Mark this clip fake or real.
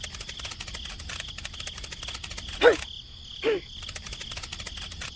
real